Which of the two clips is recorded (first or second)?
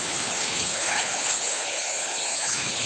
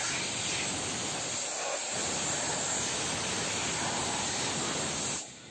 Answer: second